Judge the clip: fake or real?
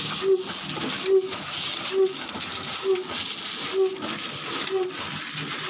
real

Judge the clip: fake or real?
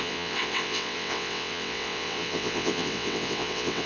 fake